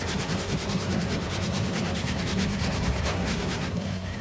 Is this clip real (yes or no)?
no